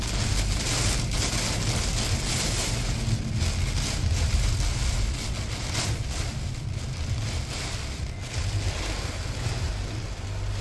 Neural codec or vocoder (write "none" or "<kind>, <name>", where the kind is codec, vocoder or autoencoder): none